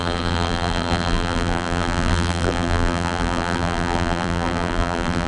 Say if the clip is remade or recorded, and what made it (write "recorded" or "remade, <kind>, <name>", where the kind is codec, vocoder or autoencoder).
remade, vocoder, BigVGAN v2